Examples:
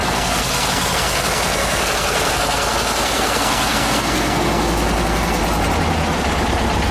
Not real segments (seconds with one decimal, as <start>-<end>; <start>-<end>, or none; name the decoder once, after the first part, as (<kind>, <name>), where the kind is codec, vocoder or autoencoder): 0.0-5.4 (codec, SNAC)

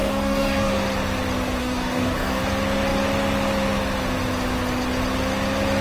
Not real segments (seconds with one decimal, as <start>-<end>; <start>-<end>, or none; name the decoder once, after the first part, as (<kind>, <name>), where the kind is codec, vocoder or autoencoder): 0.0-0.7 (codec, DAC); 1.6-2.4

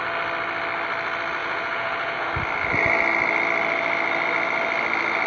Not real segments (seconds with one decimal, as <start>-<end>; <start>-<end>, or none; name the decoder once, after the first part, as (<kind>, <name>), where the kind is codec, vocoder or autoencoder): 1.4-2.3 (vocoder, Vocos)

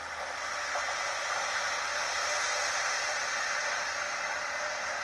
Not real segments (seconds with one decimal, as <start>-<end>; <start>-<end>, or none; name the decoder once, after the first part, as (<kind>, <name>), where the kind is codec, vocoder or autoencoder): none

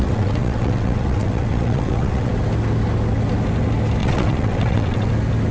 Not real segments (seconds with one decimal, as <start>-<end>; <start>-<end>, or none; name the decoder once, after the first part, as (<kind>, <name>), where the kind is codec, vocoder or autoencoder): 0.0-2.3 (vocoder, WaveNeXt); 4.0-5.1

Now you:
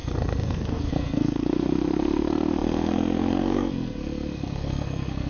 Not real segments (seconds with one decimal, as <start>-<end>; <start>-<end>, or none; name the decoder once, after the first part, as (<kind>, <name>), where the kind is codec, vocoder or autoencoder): 0.0-5.3 (codec, SNAC)